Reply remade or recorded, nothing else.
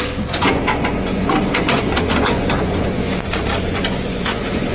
remade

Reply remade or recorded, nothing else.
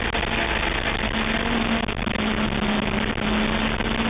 recorded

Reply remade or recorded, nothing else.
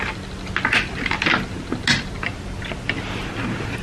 recorded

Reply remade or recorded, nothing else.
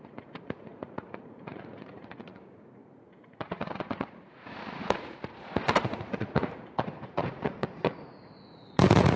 remade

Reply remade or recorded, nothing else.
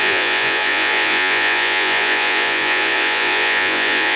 remade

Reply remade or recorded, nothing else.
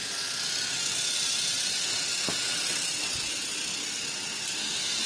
recorded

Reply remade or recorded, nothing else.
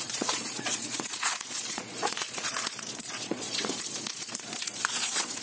remade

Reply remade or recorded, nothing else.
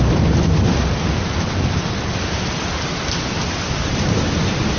recorded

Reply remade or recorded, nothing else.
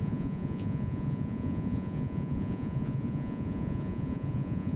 remade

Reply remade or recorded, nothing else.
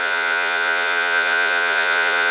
remade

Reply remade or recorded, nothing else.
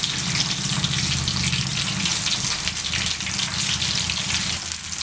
recorded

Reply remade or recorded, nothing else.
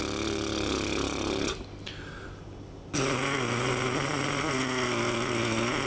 recorded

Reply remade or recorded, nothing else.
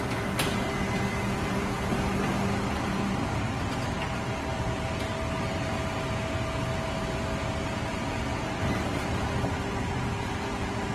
recorded